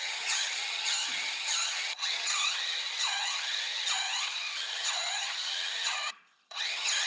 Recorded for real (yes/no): no